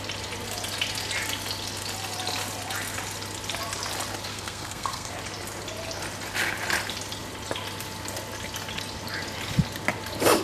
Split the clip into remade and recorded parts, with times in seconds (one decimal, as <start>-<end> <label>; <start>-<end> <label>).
0.0-4.3 recorded; 4.3-5.1 remade; 5.1-10.4 recorded